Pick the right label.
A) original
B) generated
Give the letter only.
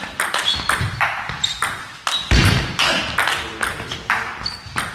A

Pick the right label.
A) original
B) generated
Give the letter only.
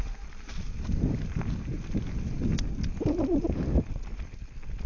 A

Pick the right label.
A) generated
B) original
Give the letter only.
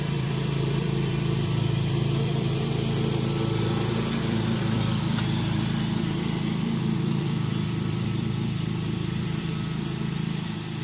A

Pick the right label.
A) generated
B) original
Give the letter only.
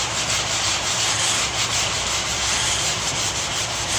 A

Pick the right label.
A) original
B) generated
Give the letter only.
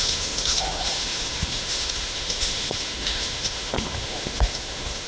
B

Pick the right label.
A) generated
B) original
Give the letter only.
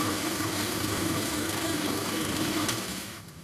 A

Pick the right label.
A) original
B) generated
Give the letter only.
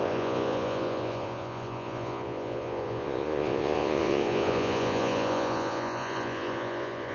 B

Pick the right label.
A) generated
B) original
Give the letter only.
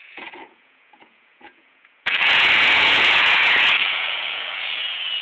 A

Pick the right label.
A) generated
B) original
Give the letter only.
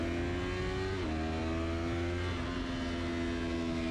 B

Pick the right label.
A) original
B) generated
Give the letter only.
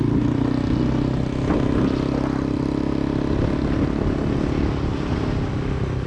A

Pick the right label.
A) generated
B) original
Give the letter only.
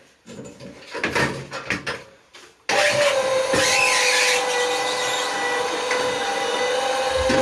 B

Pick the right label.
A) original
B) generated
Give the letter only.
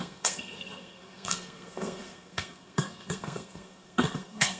B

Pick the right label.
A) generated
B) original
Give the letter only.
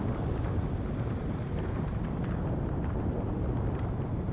B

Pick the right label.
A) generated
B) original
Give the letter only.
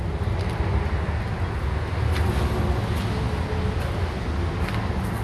B